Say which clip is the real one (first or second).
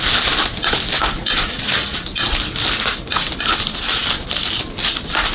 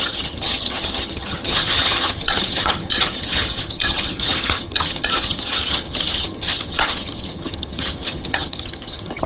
first